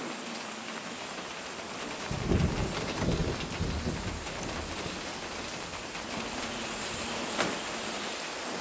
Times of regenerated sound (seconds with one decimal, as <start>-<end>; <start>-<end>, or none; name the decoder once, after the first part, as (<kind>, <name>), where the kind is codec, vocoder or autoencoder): none